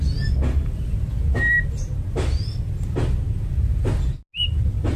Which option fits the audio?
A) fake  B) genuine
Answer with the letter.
B